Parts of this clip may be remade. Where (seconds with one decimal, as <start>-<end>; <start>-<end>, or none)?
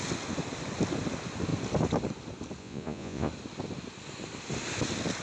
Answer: 2.6-3.3